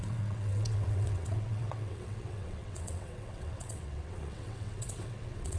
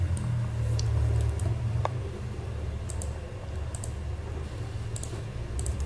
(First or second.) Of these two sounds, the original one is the second